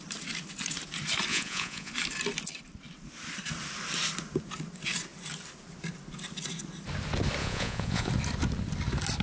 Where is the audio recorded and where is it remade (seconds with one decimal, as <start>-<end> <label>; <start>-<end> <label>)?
0.0-1.3 recorded; 1.3-1.9 remade; 1.9-7.4 recorded; 7.4-8.1 remade; 8.1-9.2 recorded